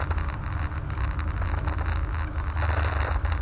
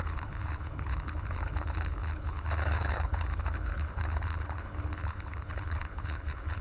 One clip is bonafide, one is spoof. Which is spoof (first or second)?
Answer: second